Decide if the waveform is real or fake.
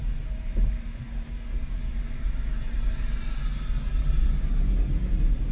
real